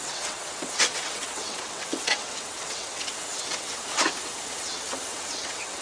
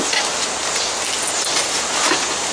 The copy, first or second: first